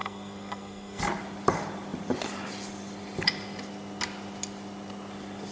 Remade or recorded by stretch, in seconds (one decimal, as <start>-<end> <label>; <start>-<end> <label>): 0.0-1.0 remade; 1.0-5.5 recorded

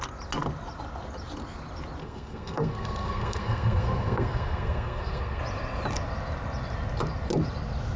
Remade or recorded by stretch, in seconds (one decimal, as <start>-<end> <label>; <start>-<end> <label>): 0.0-2.0 recorded; 2.0-5.4 remade; 5.4-8.0 recorded